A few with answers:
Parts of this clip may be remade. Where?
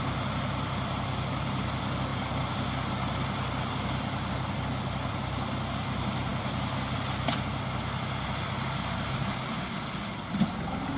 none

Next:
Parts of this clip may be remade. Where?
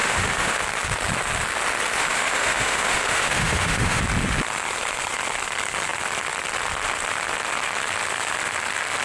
0.0-0.6 (autoencoder, DAC-VAE); 2.0-4.0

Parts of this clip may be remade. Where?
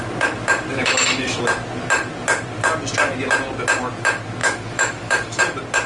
0.7-1.4 (autoencoder, DAC-VAE); 4.4-5.4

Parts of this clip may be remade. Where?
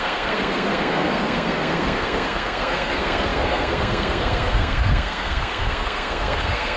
0.0-6.8 (codec, SNAC)